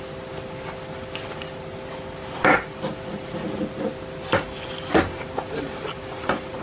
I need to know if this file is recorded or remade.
recorded